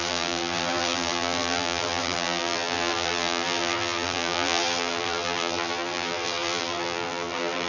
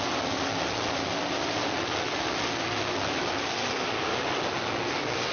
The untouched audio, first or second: second